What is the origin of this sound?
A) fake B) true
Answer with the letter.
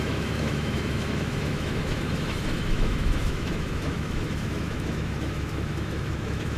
A